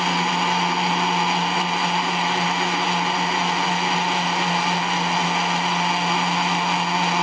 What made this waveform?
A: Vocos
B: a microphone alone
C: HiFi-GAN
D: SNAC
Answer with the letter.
B